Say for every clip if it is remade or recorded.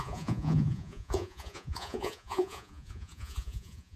remade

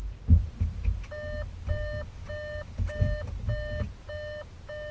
recorded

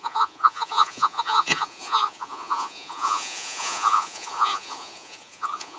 remade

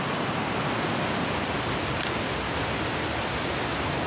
recorded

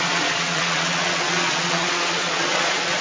remade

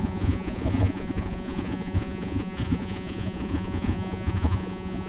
remade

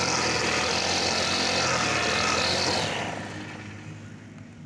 recorded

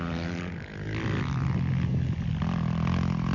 recorded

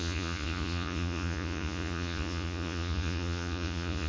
remade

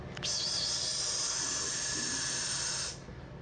recorded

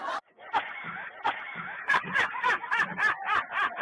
remade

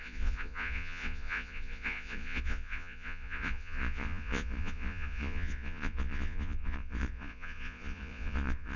remade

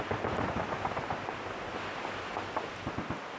recorded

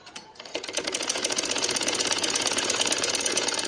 remade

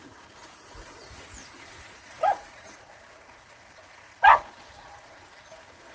remade